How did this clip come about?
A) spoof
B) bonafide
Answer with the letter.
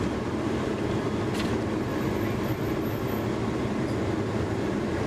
B